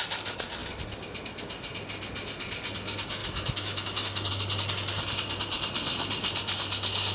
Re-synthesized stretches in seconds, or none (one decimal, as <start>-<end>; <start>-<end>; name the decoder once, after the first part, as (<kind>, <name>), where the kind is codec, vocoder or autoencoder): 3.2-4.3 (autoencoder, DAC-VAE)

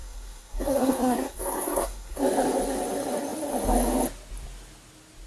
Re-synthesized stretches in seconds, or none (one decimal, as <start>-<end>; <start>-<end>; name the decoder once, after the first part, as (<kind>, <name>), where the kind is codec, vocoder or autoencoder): 0.0-2.2 (codec, SNAC)

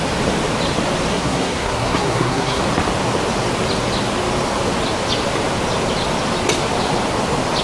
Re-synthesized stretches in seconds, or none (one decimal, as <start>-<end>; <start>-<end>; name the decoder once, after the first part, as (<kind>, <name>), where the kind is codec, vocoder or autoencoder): 1.1-2.6 (codec, SNAC)

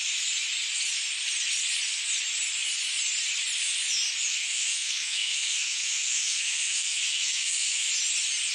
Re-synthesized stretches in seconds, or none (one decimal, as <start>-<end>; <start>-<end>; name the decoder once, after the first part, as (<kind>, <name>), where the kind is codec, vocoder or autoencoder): 4.3-7.9 (codec, SNAC)

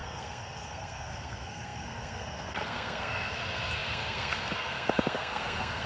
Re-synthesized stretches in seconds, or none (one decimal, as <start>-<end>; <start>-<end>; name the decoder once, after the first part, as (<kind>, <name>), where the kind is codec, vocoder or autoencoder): 0.0-5.9 (codec, SNAC)